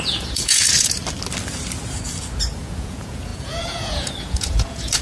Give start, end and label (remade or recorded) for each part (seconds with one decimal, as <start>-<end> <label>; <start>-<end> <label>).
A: 0.0-1.0 remade; 1.0-2.6 recorded; 2.6-5.0 remade